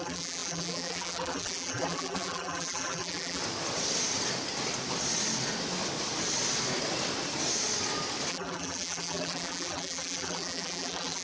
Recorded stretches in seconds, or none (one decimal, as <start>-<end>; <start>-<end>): 3.4-8.3